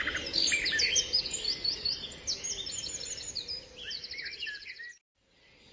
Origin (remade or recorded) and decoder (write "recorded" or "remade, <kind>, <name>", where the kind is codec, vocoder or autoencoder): recorded